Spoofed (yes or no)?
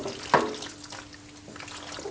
no